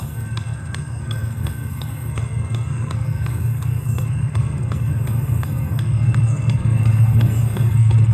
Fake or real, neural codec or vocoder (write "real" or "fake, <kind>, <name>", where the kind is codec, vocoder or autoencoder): fake, codec, SNAC